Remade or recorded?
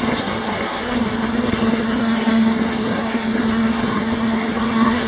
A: remade